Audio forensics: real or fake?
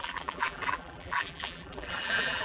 fake